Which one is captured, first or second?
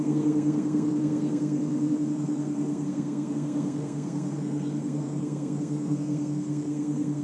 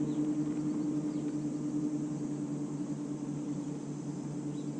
second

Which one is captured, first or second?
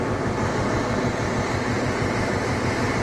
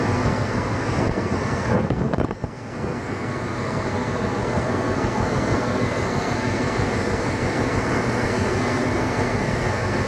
first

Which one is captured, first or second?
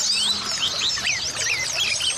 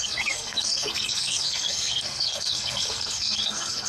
first